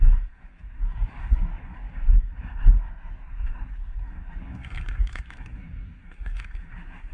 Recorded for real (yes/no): no